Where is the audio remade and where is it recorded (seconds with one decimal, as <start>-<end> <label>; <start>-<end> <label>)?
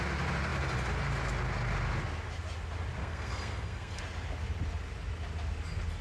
0.0-3.0 recorded; 3.0-4.0 remade; 4.0-6.0 recorded